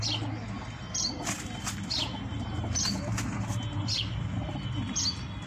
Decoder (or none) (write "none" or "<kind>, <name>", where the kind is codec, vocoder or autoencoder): none